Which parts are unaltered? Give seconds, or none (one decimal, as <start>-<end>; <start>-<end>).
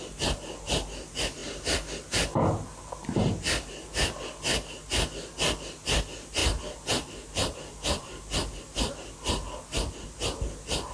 0.0-10.9